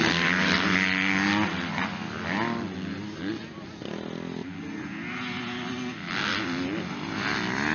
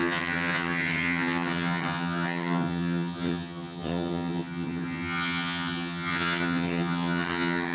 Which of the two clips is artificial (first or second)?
second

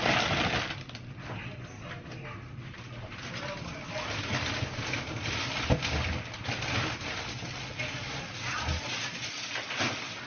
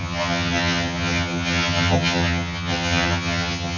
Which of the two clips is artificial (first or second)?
second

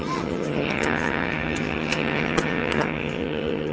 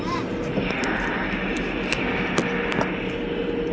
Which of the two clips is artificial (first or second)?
first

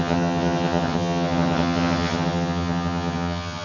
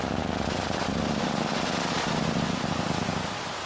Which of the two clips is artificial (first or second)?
first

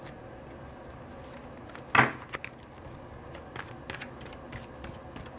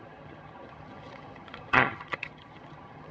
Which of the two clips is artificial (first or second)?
second